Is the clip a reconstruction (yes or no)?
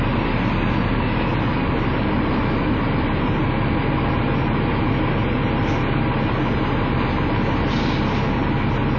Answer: no